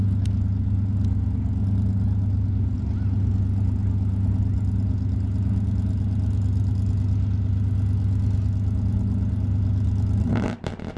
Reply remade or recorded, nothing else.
recorded